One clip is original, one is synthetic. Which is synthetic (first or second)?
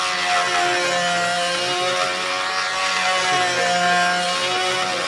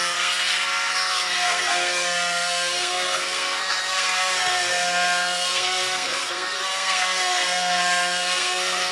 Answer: second